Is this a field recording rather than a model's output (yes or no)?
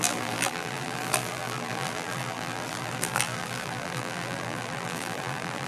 no